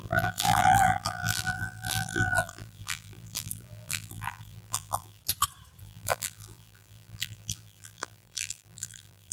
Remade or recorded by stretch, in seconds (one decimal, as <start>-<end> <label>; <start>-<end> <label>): 0.0-5.2 remade; 5.2-5.8 recorded; 5.8-9.3 remade